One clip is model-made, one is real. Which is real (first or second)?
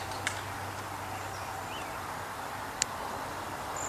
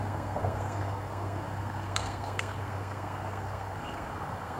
first